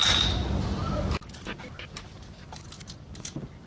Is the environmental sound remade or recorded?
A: recorded